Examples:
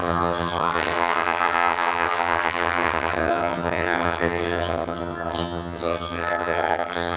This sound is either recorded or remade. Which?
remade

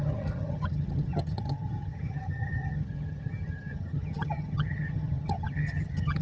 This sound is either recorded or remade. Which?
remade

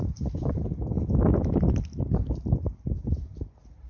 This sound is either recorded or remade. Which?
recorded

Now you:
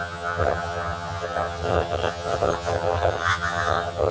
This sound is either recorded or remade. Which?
remade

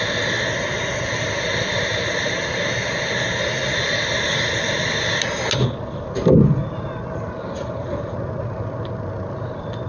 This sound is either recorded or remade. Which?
recorded